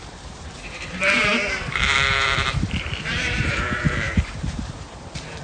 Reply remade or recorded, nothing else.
remade